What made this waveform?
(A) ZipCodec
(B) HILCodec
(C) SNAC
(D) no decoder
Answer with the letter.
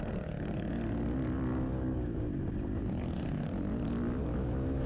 D